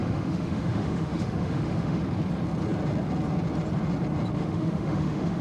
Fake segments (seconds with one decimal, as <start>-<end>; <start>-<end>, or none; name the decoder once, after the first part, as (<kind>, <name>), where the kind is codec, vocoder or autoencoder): 0.0-2.0 (autoencoder, DAC-VAE); 4.3-5.4